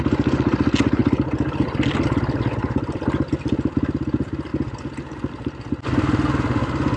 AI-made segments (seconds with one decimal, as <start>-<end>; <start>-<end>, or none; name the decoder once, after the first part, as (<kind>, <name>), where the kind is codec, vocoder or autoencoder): none